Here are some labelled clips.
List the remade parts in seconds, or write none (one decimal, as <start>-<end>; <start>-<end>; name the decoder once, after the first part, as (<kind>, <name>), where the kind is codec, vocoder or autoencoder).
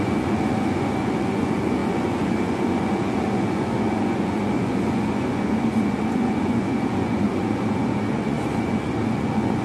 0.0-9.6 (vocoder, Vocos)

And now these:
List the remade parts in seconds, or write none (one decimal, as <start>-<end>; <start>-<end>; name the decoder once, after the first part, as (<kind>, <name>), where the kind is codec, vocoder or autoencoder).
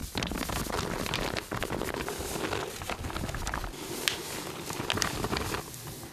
none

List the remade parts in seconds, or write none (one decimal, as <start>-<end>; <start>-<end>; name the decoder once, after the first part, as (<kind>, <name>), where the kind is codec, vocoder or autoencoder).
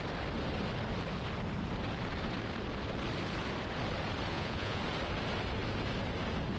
4.3-4.8 (vocoder, Vocos)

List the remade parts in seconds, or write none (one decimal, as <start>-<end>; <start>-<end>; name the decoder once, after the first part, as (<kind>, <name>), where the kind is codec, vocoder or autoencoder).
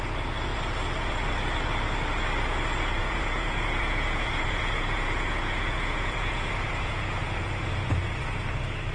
3.0-7.7 (vocoder, Vocos)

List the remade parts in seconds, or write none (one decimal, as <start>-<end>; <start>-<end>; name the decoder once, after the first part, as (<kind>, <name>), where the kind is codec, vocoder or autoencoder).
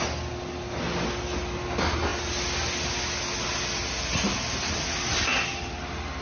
none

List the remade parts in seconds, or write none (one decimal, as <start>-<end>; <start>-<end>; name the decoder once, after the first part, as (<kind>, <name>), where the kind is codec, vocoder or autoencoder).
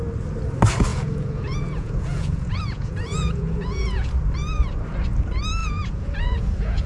0.9-4.1 (vocoder, Vocos); 5.6-6.9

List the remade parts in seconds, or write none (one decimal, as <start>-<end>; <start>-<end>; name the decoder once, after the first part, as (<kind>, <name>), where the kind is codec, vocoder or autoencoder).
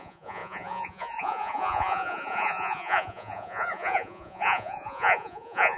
0.0-5.8 (vocoder, Vocos)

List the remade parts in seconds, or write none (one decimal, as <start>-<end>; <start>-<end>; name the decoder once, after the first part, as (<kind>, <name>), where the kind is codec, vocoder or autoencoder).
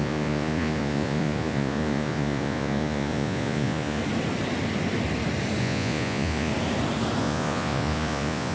0.0-4.0 (vocoder, Vocos); 5.6-6.5; 7.2-8.5